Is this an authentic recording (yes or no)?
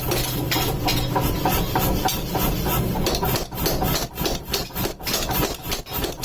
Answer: yes